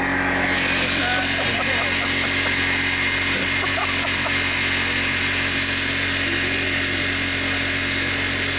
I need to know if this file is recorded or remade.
recorded